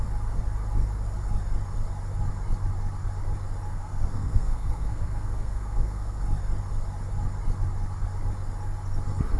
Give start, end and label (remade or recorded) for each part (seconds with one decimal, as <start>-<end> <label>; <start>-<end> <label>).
0.0-3.7 recorded; 3.7-6.2 remade; 6.2-9.4 recorded